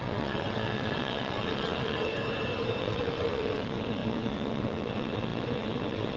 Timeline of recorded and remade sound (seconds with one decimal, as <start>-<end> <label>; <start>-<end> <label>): 0.0-2.1 remade; 2.1-2.8 recorded; 2.8-6.2 remade